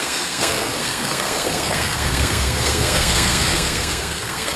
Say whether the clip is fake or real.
fake